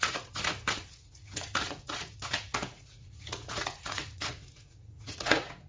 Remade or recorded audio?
remade